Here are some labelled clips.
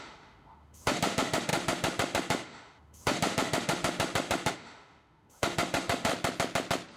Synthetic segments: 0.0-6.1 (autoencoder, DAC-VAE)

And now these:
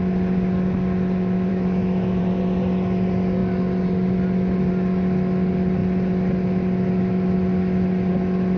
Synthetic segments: 1.5-2.2 (autoencoder, DAC-VAE)

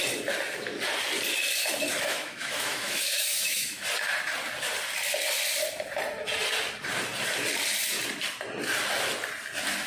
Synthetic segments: 1.9-3.8 (autoencoder, DAC-VAE)

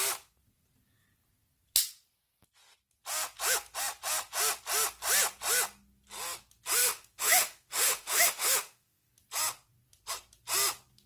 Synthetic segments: 6.8-9.1 (autoencoder, DAC-VAE)

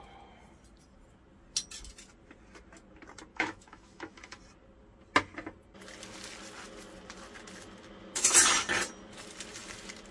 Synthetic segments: 3.3-4.4 (autoencoder, DAC-VAE)

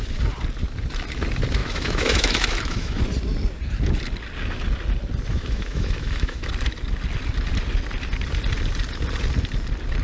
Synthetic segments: 1.6-3.0 (autoencoder, DAC-VAE); 5.3-6.5

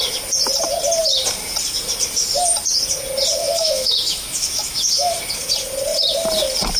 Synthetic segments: 3.4-5.2 (autoencoder, DAC-VAE)